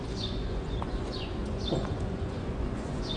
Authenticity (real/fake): fake